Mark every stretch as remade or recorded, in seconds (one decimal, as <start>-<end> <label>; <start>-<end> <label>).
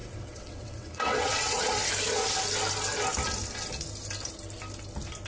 0.0-1.6 remade; 1.6-5.3 recorded